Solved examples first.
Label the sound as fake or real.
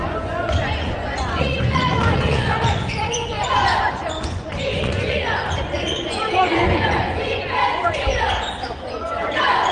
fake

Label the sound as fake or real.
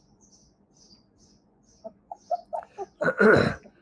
fake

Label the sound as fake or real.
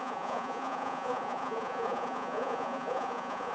fake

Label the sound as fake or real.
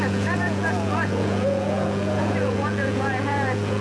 fake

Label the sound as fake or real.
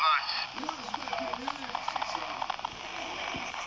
real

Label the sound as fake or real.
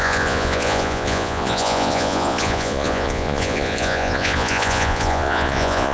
fake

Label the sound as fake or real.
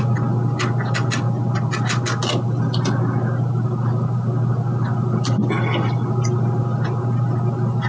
real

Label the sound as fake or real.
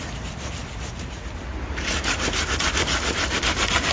real